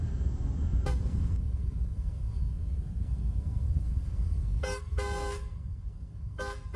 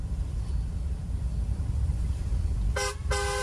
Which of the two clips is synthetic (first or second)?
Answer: first